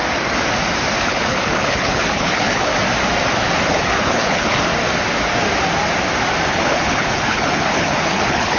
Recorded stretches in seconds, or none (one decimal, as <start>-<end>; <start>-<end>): 0.0-1.0; 2.7-3.7; 4.7-6.5